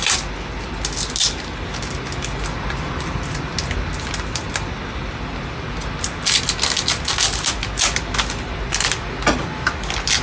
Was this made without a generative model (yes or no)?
yes